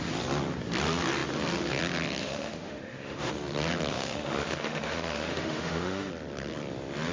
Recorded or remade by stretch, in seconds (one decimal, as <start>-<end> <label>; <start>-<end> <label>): 0.0-2.2 recorded; 2.2-3.3 remade; 3.3-3.9 recorded; 3.9-6.1 remade; 6.1-7.1 recorded